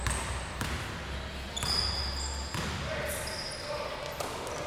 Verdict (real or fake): real